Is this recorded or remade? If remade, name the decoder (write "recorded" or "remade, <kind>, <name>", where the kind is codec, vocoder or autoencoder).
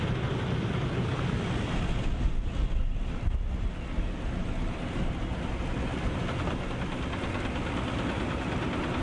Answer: recorded